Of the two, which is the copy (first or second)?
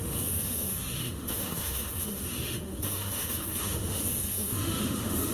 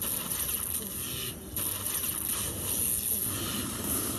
first